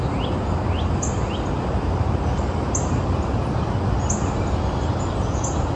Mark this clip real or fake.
real